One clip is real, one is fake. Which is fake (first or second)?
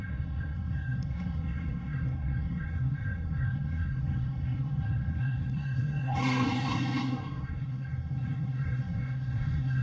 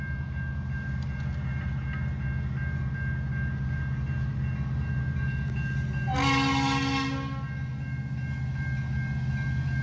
first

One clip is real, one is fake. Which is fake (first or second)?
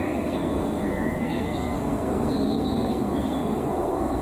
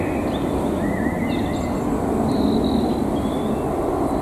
first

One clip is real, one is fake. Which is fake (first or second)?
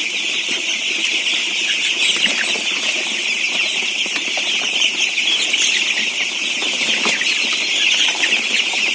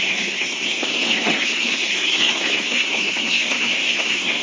second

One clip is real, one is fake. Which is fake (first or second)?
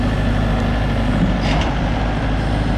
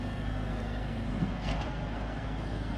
second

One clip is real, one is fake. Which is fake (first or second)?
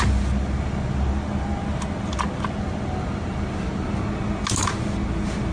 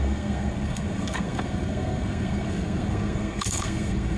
second